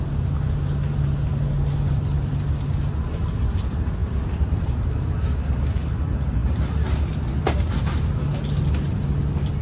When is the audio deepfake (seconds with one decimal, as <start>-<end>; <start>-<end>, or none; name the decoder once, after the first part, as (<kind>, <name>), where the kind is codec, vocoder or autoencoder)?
4.0-6.0 (vocoder, BigVGAN v2)